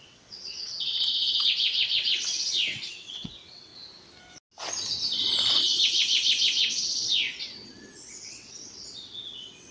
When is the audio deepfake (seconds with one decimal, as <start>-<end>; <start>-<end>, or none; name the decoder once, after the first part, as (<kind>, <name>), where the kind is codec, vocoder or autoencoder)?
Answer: 0.0-3.7 (vocoder, WaveNeXt); 5.5-9.7